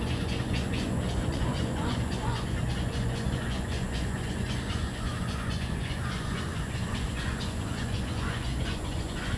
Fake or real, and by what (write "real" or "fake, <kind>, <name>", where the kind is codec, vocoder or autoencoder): fake, vocoder, Vocos